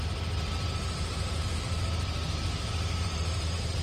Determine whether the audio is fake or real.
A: fake